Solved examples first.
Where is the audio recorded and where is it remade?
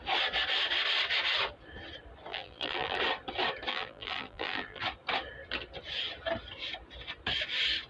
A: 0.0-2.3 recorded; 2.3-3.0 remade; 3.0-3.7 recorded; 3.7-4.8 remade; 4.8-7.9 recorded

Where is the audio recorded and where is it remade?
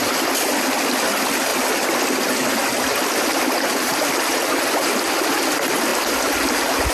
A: 0.0-6.9 recorded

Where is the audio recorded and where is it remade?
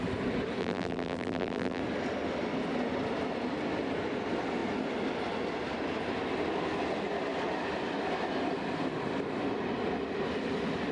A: 0.0-0.6 recorded; 0.6-1.8 remade; 1.8-10.9 recorded